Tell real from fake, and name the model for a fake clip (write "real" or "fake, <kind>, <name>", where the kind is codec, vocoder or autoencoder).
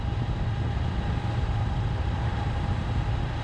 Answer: real